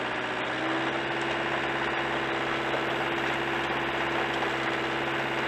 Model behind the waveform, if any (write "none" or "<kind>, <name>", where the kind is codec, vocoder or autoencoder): none